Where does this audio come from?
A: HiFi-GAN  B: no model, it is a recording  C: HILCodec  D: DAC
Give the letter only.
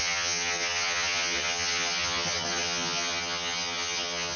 A